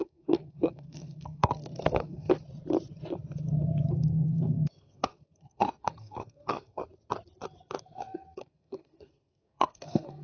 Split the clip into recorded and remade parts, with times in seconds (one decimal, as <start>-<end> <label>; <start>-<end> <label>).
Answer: 0.0-2.3 remade; 2.3-3.9 recorded; 3.9-6.8 remade; 6.8-7.8 recorded; 7.8-10.2 remade